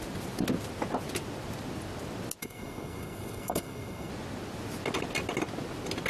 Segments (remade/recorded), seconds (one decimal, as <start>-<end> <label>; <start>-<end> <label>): 0.0-2.4 recorded; 2.4-4.1 remade; 4.1-6.1 recorded